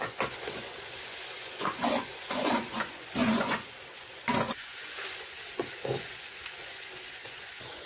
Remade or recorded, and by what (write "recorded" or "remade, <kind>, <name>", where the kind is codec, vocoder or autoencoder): remade, vocoder, Vocos